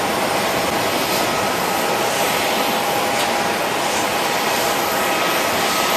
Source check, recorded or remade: recorded